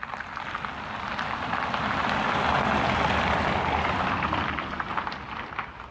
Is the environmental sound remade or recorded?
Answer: recorded